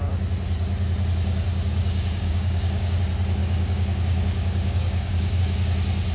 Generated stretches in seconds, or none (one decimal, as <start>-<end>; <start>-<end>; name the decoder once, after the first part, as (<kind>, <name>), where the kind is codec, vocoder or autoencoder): 1.7-3.0 (codec, DAC); 3.4-5.4